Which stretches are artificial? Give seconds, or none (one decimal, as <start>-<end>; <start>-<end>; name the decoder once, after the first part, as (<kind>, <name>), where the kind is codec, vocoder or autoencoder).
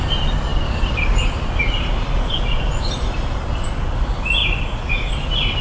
none